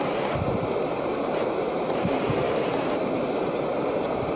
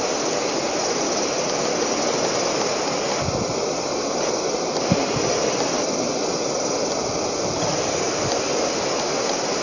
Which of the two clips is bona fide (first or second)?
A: second